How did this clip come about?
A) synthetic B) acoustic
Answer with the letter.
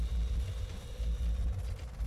B